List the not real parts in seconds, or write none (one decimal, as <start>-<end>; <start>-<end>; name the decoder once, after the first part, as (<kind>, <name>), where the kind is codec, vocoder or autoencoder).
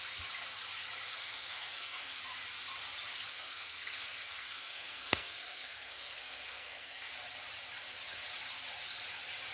1.1-2.2 (codec, SNAC); 3.3-7.1